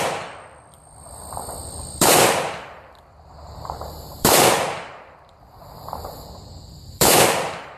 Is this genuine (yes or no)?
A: no